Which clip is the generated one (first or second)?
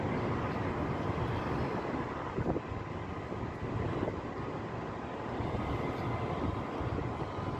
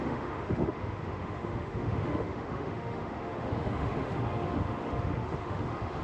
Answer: second